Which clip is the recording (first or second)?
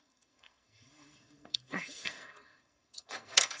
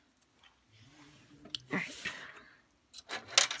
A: second